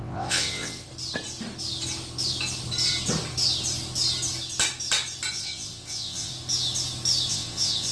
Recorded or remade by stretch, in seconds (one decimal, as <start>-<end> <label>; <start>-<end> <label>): 0.0-0.9 remade; 0.9-5.3 recorded; 5.3-6.3 remade; 6.3-7.3 recorded; 7.3-7.9 remade